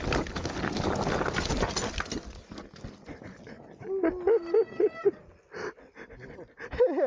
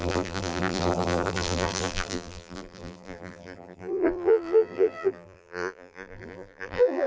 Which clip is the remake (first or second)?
second